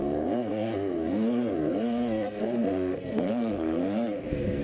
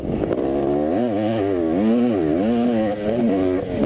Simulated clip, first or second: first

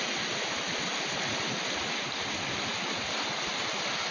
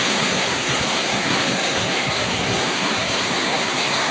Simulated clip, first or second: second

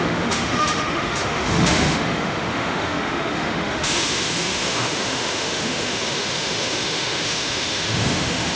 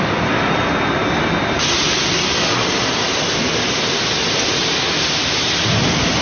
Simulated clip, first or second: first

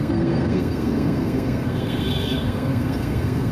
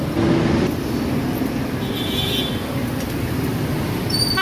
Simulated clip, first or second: first